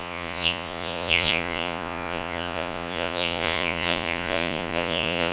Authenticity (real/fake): fake